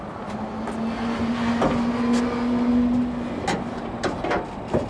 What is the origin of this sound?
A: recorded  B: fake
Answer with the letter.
A